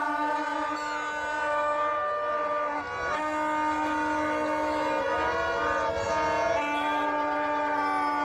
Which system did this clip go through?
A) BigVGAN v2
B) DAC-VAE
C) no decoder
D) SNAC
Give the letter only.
C